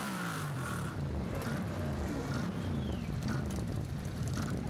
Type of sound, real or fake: fake